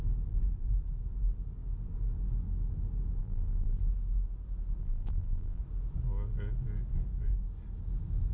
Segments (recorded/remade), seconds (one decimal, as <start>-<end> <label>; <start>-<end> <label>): 0.0-3.2 recorded; 3.2-3.9 remade; 3.9-4.8 recorded; 4.8-5.6 remade; 5.6-8.3 recorded

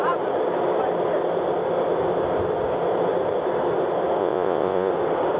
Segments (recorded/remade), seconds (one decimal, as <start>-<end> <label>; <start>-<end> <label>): 0.0-4.2 recorded; 4.2-4.9 remade; 4.9-5.4 recorded

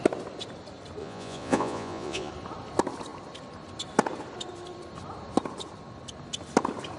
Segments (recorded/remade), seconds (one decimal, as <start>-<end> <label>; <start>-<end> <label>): 0.0-1.0 recorded; 1.0-2.3 remade; 2.3-7.0 recorded

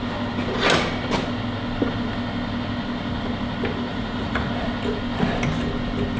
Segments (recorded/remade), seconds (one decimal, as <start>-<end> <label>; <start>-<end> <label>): 0.0-3.9 recorded; 3.9-4.5 remade; 4.5-6.2 recorded

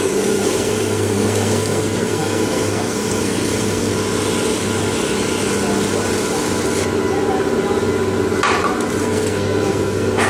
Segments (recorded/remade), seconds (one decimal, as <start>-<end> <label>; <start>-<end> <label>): 0.0-3.9 remade; 3.9-9.0 recorded; 9.0-10.3 remade

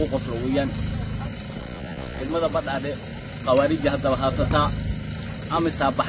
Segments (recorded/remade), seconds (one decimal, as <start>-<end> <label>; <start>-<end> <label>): 0.0-1.6 recorded; 1.6-2.2 remade; 2.2-6.1 recorded